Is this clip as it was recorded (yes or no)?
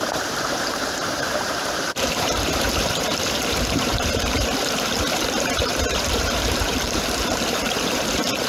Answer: no